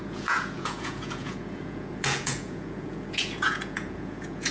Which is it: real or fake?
fake